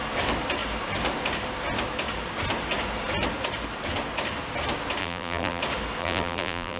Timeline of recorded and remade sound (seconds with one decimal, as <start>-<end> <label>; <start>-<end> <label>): 0.0-5.0 recorded; 5.0-5.6 remade; 5.6-6.0 recorded; 6.0-6.8 remade